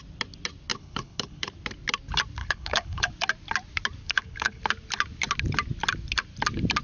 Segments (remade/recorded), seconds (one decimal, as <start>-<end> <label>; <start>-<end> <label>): 0.0-0.7 recorded; 0.7-1.5 remade; 1.5-2.4 recorded; 2.4-3.1 remade; 3.1-4.0 recorded; 4.0-4.6 remade; 4.6-6.8 recorded